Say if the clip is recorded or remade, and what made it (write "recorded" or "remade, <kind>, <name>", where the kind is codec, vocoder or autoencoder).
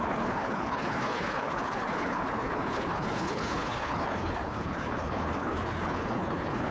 remade, codec, HILCodec